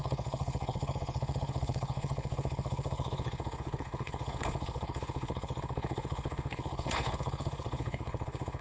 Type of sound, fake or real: fake